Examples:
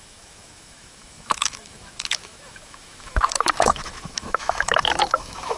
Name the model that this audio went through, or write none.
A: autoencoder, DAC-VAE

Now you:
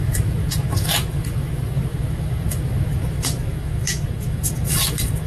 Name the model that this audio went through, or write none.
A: autoencoder, DAC-VAE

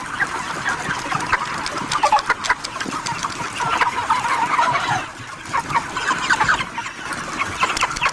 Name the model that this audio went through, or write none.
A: none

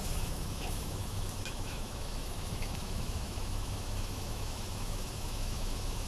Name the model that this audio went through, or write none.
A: autoencoder, DAC-VAE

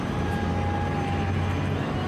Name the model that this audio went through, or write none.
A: none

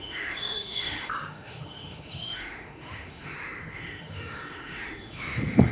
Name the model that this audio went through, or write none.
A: autoencoder, DAC-VAE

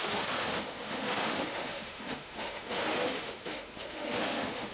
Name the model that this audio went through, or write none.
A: autoencoder, DAC-VAE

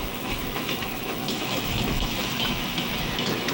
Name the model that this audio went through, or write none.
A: autoencoder, DAC-VAE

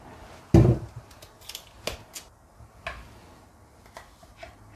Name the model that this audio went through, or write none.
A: none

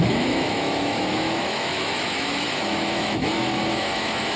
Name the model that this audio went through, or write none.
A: autoencoder, DAC-VAE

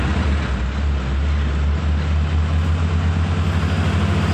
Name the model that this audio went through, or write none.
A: none